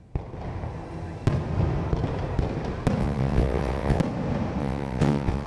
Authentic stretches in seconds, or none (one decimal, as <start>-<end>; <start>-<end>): 0.0-3.0; 4.0-4.6